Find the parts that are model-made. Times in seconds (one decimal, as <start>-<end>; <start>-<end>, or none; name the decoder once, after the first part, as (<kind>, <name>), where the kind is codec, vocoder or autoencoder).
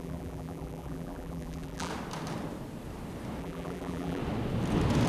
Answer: 0.0-1.9 (vocoder, BigVGAN v2); 3.4-4.2